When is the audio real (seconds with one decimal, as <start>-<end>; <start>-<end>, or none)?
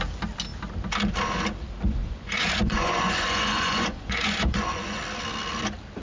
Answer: 0.0-2.0; 5.0-6.0